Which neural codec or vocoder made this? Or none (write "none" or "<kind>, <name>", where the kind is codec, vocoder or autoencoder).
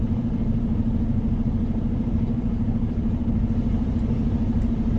vocoder, BigVGAN v2